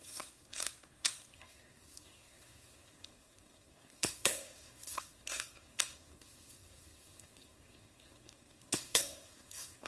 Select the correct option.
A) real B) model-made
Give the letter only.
B